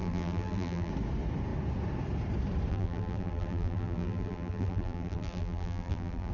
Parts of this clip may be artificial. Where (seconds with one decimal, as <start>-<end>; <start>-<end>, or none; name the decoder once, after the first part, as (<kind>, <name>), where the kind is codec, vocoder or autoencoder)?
0.0-0.9 (vocoder, BigVGAN v2); 2.7-6.3